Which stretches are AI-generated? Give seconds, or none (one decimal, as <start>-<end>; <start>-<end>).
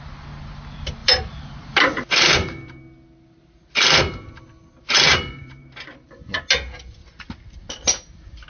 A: 1.0-2.8; 5.1-5.9